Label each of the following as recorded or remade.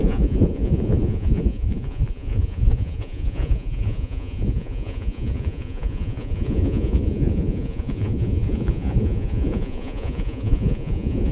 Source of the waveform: remade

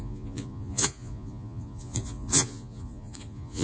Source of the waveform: remade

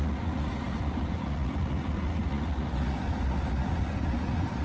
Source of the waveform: remade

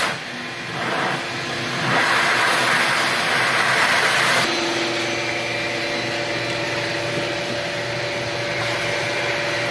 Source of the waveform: recorded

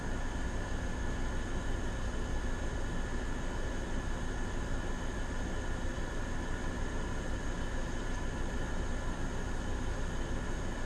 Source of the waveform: recorded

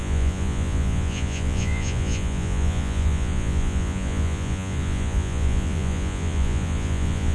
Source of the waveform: remade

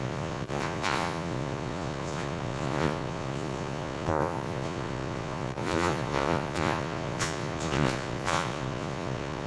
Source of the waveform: remade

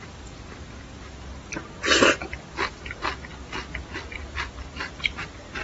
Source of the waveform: recorded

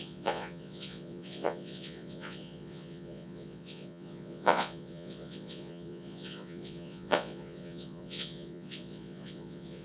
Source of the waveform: remade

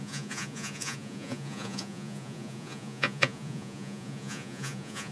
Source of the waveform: remade